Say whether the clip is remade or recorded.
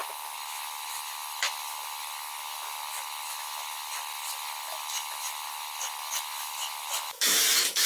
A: remade